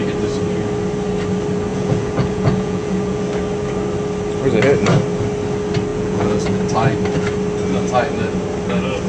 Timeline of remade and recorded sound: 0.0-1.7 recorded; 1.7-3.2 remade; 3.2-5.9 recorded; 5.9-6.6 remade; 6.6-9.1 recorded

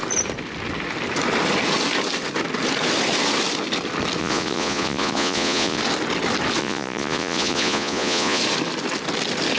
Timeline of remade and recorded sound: 0.0-4.2 recorded; 4.2-5.8 remade; 5.8-6.6 recorded; 6.6-8.4 remade; 8.4-9.6 recorded

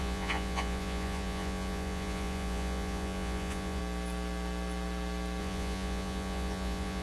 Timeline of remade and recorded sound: 0.0-3.8 remade; 3.8-5.4 recorded; 5.4-7.0 remade